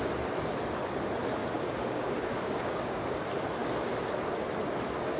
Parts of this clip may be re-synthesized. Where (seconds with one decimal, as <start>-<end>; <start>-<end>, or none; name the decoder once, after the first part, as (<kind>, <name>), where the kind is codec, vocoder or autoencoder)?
1.4-3.0 (codec, DAC)

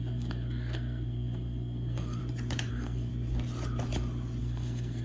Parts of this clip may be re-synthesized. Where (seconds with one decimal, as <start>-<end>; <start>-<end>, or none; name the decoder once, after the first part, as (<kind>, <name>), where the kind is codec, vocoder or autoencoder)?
0.0-2.2 (codec, SNAC); 2.7-3.1; 4.4-5.0

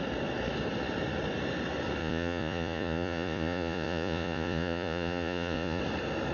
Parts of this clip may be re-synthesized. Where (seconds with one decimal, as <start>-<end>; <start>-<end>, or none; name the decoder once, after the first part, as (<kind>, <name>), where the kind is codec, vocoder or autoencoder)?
2.0-5.8 (vocoder, Vocos)

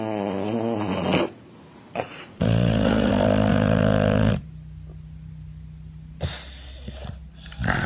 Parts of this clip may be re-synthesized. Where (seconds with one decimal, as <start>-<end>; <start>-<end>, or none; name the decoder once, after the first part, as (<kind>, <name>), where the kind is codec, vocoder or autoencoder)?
1.9-3.1 (vocoder, Vocos); 3.5-4.3

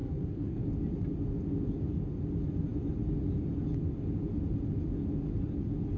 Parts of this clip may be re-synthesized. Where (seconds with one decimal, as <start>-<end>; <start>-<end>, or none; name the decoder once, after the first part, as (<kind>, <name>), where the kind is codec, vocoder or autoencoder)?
0.0-0.6 (codec, SNAC)

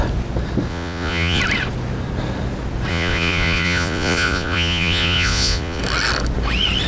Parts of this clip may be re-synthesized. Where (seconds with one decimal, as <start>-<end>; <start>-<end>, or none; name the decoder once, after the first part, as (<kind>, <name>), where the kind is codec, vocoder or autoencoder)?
0.7-1.4 (vocoder, Vocos); 2.9-5.8